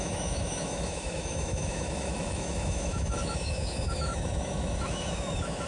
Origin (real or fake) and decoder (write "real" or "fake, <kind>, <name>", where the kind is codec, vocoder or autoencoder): fake, autoencoder, DAC-VAE